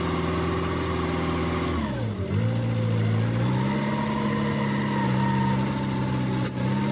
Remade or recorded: recorded